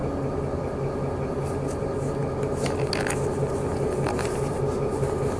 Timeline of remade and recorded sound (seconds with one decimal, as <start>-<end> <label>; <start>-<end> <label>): 0.0-5.4 recorded